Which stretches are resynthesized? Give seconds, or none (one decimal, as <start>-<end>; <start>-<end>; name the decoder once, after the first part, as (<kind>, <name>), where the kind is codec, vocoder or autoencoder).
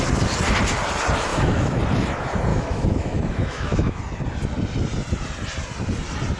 1.3-1.8 (autoencoder, DAC-VAE); 2.5-4.0